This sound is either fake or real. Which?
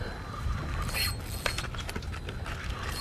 real